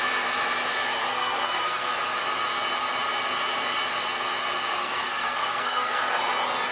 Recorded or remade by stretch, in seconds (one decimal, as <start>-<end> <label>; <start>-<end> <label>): 0.0-1.1 recorded; 1.1-1.9 remade; 1.9-4.7 recorded; 4.7-6.0 remade; 6.0-6.7 recorded